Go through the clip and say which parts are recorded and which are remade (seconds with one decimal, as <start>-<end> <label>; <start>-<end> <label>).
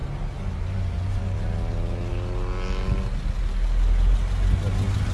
0.0-5.1 recorded